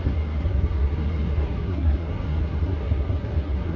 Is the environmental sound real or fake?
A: fake